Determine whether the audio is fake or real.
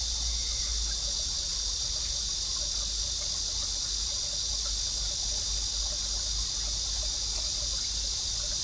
real